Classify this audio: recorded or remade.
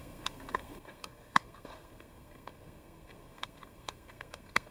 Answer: remade